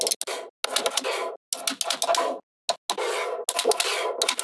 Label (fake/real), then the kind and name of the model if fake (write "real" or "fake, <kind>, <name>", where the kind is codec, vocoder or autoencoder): real